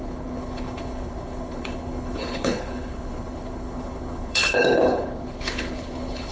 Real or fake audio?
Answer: fake